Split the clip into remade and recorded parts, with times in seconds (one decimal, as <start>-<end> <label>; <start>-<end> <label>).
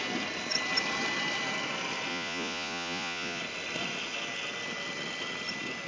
0.0-2.1 recorded; 2.1-3.4 remade; 3.4-5.9 recorded